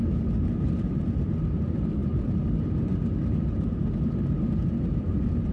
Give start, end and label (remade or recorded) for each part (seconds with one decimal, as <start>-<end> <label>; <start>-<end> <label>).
0.0-5.5 recorded